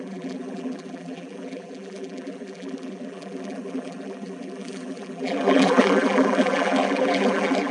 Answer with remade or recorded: remade